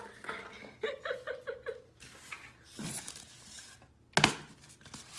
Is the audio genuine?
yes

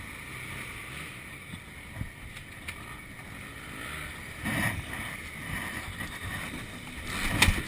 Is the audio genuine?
yes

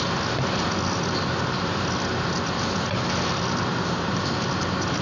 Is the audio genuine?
yes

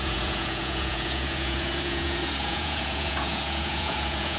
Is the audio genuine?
no